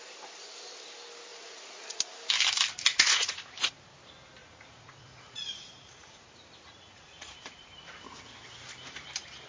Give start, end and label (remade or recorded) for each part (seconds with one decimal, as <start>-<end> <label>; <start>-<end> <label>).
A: 0.0-1.3 recorded; 1.3-1.9 remade; 1.9-2.9 recorded; 2.9-3.8 remade; 3.8-4.4 recorded; 4.4-7.7 remade; 7.7-9.5 recorded